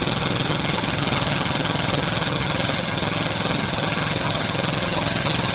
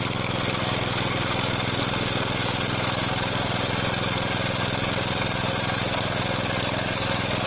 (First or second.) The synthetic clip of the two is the first